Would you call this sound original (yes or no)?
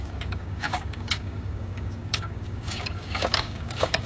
no